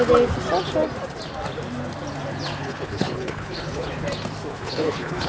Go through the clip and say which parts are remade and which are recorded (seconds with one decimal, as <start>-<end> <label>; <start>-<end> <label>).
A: 0.0-2.6 recorded; 2.6-3.9 remade; 3.9-4.5 recorded; 4.5-5.3 remade